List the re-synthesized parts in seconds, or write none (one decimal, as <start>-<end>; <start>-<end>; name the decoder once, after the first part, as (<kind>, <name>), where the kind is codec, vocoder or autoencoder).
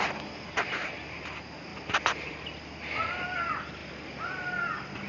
none